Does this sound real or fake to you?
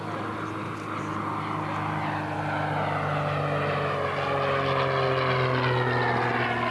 real